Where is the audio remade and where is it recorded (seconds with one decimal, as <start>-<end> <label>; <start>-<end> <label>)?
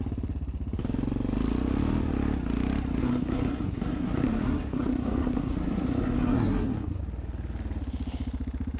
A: 0.0-3.0 recorded; 3.0-7.0 remade; 7.0-8.8 recorded